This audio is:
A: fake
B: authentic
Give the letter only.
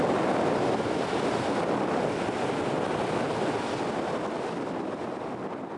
B